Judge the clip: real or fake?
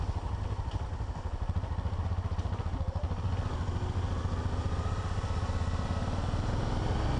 real